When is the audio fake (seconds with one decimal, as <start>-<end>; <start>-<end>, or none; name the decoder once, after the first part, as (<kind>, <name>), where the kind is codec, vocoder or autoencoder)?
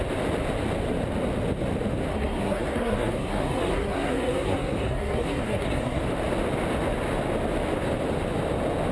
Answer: 2.1-6.0 (codec, SNAC)